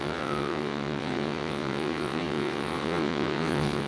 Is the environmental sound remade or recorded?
remade